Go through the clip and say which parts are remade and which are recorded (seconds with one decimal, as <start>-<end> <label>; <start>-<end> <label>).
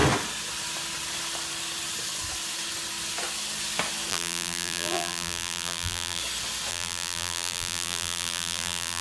0.0-4.1 recorded; 4.1-6.2 remade; 6.2-6.7 recorded; 6.7-9.0 remade